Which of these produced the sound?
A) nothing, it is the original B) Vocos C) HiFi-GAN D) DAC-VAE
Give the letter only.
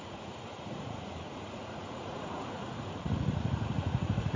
B